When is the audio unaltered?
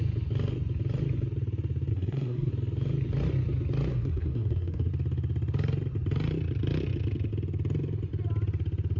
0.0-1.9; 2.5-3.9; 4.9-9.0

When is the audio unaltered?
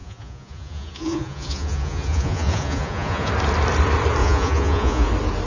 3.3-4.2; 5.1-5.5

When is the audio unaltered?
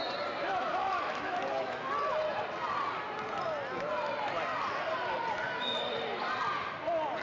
0.0-0.4; 1.9-7.2